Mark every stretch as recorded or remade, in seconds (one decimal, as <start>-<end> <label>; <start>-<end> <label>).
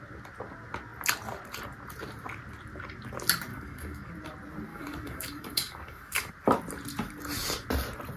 0.0-3.5 recorded; 3.5-4.1 remade; 4.1-4.7 recorded; 4.7-6.3 remade; 6.3-8.2 recorded